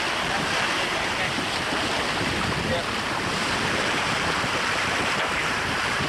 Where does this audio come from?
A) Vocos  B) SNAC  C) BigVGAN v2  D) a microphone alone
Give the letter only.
C